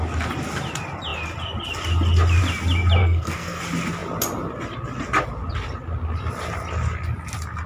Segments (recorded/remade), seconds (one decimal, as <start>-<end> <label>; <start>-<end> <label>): 0.0-3.0 recorded; 3.0-3.6 remade; 3.6-7.7 recorded